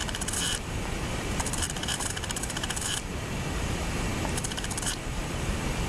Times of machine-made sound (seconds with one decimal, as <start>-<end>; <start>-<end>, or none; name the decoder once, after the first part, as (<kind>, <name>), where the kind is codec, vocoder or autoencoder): 0.0-3.1 (vocoder, BigVGAN v2); 3.6-4.1; 4.9-5.9